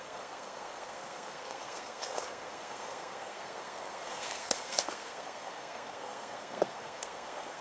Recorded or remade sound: remade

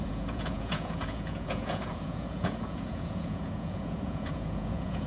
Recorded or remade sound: remade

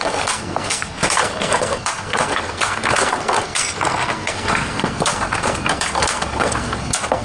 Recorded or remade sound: remade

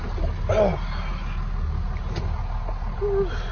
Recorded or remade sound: recorded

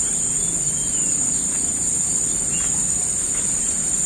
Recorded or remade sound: recorded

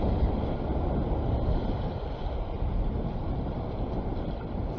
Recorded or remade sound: recorded